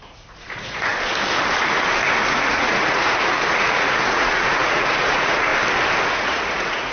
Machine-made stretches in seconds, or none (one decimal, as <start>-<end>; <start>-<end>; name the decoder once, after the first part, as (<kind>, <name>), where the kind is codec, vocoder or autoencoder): 0.0-0.9 (vocoder, Vocos); 2.3-5.5; 6.1-6.9